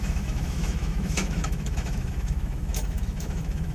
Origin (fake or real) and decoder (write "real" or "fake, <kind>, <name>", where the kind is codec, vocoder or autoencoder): fake, autoencoder, DAC-VAE